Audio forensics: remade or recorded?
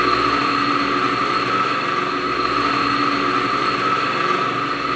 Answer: recorded